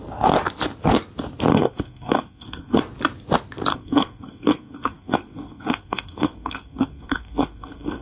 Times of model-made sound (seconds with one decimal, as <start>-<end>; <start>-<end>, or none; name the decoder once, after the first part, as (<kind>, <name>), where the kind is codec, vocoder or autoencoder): 1.5-2.8 (codec, SNAC); 3.7-8.0